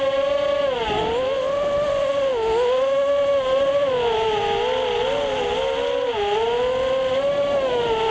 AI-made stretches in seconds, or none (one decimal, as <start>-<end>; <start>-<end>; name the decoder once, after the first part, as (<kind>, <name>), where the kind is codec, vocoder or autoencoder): none